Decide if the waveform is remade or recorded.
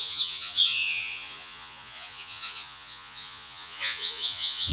remade